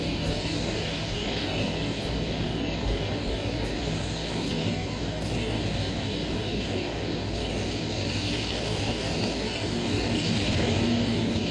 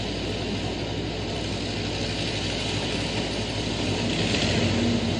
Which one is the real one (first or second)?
second